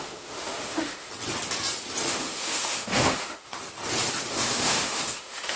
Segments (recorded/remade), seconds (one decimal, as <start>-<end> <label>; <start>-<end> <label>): 0.0-1.1 remade; 1.1-2.1 recorded; 2.1-3.5 remade; 3.5-4.3 recorded; 4.3-5.6 remade